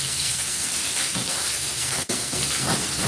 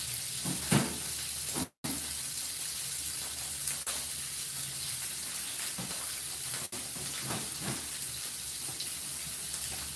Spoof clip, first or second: first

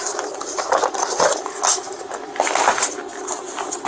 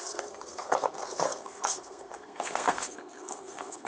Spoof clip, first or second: second